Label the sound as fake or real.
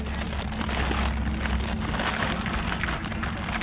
real